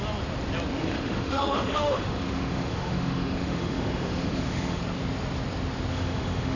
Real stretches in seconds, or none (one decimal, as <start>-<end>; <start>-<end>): 0.0-0.8; 4.8-5.9